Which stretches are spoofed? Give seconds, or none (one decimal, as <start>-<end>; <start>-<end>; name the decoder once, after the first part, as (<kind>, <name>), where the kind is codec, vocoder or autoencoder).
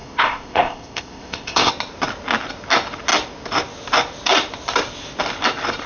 0.0-1.7 (codec, ZipCodec)